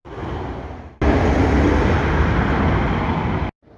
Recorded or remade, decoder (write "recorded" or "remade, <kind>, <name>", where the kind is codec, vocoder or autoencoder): recorded